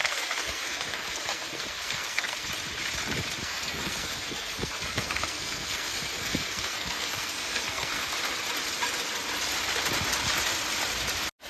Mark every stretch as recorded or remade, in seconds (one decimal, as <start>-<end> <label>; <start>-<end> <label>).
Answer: 0.0-2.5 remade; 2.5-3.4 recorded; 3.4-8.1 remade; 8.1-11.5 recorded